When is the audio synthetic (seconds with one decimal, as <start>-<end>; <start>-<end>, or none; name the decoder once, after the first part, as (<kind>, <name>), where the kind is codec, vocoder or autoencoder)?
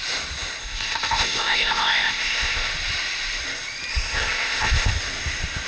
0.6-2.7 (codec, ZipCodec); 3.9-4.9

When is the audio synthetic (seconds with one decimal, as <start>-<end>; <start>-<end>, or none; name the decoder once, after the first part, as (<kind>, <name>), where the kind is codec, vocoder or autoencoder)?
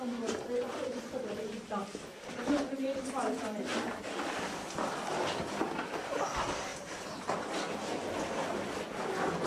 1.8-5.2 (vocoder, BigVGAN v2)